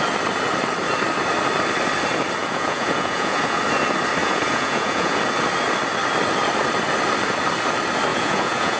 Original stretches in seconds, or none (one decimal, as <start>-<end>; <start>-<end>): 0.0-2.4; 3.6-4.2; 5.2-8.1